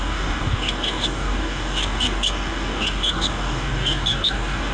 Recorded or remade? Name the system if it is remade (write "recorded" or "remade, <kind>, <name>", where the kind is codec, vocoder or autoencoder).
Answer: remade, codec, DAC